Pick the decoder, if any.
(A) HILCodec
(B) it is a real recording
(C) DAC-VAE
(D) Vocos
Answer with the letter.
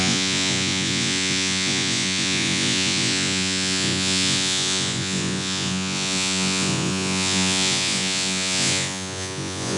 D